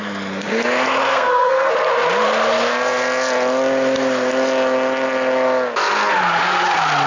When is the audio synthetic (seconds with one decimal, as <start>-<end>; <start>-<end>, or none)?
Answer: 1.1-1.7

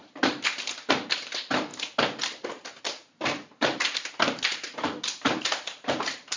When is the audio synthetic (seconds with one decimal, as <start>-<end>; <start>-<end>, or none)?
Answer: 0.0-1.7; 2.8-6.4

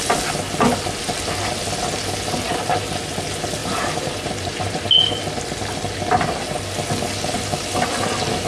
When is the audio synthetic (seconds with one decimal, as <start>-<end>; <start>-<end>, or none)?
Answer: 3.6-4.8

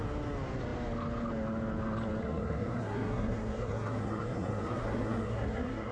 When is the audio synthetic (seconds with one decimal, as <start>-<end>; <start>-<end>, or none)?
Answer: 2.2-5.9

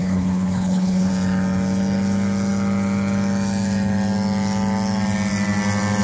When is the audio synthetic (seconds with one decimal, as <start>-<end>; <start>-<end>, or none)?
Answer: 0.0-1.1